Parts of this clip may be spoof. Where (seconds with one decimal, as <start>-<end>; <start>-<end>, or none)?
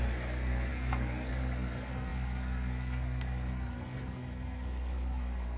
0.0-5.6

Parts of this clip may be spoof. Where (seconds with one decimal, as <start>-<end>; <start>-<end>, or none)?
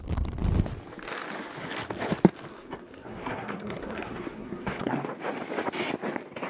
2.5-5.0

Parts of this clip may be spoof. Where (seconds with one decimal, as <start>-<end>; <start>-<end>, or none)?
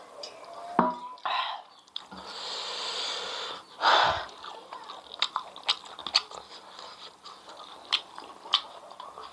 none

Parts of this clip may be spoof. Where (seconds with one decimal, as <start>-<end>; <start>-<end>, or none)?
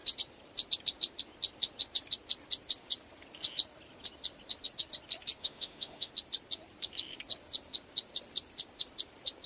5.4-6.1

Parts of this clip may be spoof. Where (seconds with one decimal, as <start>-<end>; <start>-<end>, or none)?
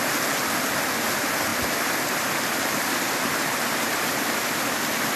none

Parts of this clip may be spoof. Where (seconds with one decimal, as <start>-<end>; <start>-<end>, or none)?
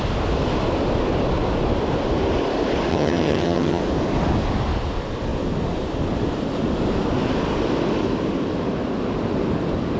2.9-3.8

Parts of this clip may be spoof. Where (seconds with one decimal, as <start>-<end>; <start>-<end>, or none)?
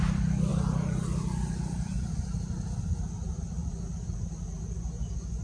none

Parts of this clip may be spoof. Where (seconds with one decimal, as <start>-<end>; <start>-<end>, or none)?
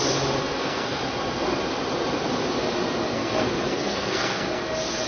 0.4-1.0; 3.1-4.6